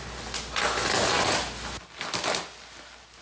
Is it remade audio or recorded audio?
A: recorded